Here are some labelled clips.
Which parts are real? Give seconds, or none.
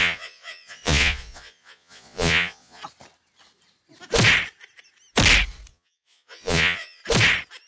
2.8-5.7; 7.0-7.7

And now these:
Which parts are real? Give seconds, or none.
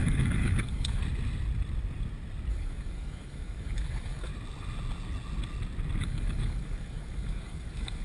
1.0-2.5; 4.3-6.0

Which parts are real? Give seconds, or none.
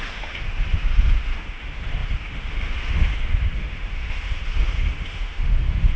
none